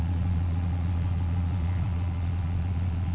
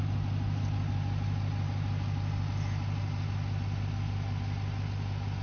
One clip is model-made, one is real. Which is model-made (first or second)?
first